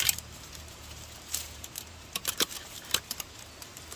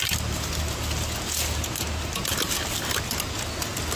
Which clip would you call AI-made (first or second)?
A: first